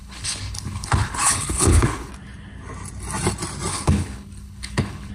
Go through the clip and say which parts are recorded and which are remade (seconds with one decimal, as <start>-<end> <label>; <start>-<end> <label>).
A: 0.0-2.1 remade; 2.1-3.7 recorded; 3.7-5.1 remade